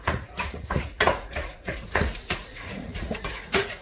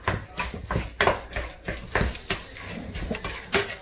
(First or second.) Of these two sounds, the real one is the second